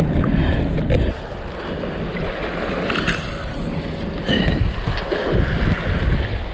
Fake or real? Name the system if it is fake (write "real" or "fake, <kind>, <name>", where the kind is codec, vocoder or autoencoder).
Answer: real